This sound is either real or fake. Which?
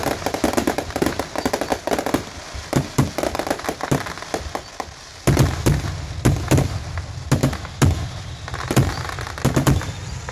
real